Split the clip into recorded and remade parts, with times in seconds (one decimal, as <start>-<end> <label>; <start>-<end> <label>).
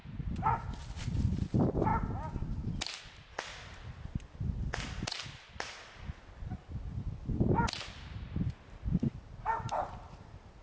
0.0-0.8 recorded; 0.8-1.9 remade; 1.9-3.0 recorded; 3.0-10.6 remade